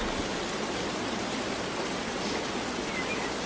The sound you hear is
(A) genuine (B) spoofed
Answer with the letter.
A